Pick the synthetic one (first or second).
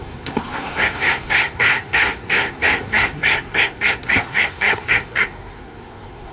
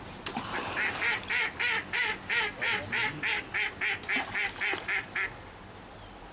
first